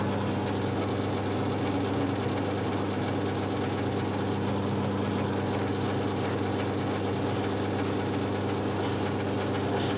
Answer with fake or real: real